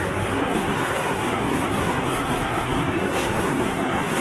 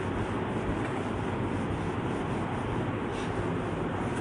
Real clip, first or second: second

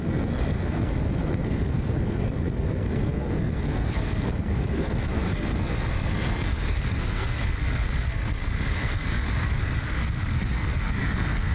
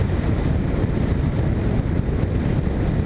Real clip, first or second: second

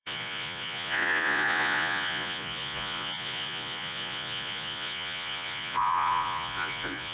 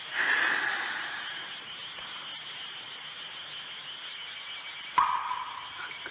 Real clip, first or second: second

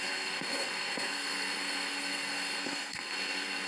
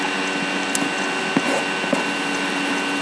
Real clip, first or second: second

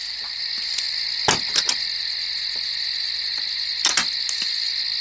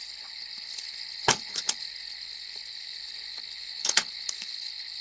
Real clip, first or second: first